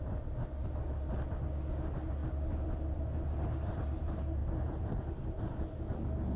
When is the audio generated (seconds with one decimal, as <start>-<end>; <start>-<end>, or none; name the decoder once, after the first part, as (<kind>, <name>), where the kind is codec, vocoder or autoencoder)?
2.2-3.0 (vocoder, BigVGAN v2); 4.4-5.4